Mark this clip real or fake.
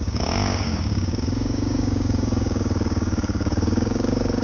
fake